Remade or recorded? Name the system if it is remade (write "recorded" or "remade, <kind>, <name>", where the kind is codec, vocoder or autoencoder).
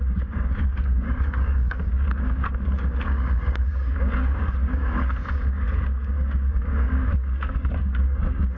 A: remade, codec, DAC